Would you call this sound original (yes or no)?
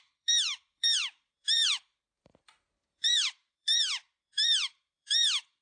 no